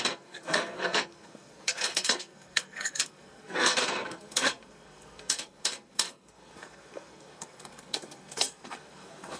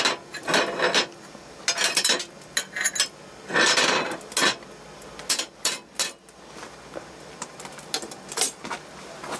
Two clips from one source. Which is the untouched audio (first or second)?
second